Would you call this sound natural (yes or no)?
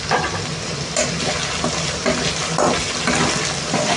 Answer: yes